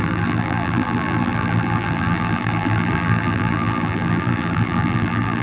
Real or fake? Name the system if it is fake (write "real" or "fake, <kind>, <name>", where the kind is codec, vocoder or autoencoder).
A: fake, vocoder, BigVGAN v2